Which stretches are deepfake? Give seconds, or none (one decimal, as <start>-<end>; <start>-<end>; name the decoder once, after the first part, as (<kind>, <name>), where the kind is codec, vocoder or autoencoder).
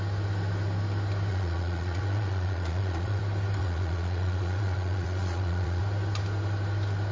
1.3-3.2 (vocoder, Vocos); 3.6-5.8